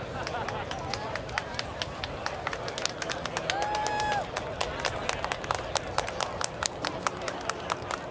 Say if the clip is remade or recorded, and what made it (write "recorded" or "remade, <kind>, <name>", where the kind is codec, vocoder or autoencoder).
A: recorded